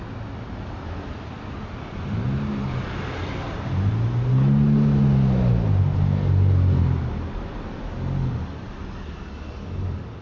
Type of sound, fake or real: real